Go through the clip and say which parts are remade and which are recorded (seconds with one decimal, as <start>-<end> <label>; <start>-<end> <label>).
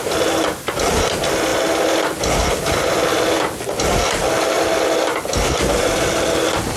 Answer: 0.0-6.8 recorded